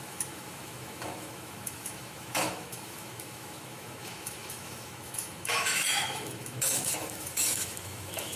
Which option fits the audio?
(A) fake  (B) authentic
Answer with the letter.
A